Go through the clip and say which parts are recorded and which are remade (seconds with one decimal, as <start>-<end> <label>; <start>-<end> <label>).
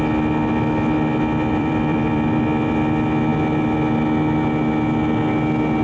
0.0-1.5 recorded; 1.5-2.4 remade; 2.4-5.8 recorded